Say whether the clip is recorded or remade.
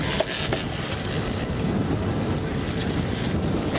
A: recorded